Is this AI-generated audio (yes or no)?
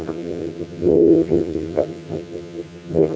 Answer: yes